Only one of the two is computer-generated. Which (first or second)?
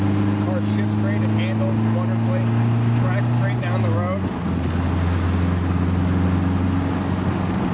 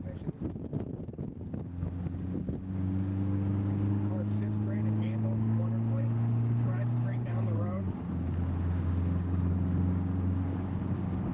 second